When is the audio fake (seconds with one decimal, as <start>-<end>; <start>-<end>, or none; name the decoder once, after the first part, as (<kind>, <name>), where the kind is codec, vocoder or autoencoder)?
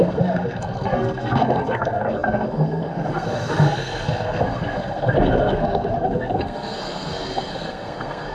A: 0.0-8.3 (codec, SNAC)